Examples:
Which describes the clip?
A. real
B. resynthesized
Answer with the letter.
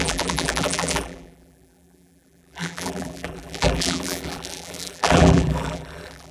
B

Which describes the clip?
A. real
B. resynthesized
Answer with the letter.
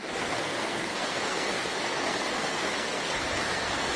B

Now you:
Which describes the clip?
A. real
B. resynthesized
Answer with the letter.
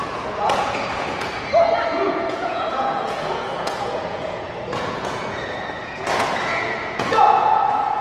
B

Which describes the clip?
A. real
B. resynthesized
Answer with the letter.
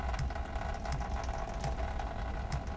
A